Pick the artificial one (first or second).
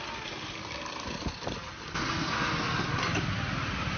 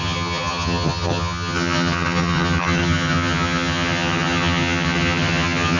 second